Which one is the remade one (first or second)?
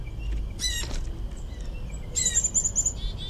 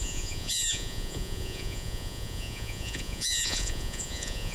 second